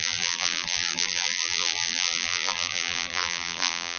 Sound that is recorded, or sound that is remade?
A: remade